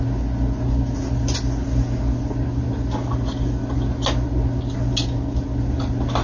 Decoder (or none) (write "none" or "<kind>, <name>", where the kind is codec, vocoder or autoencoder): none